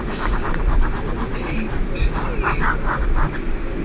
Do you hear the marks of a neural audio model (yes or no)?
no